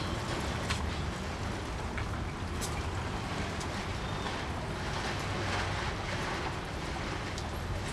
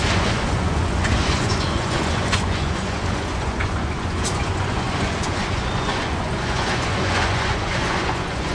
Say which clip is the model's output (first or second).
second